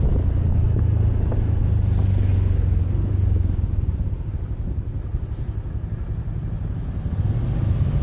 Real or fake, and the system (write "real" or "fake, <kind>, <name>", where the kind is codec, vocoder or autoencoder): real